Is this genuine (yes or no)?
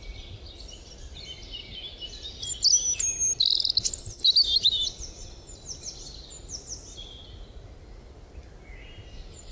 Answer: yes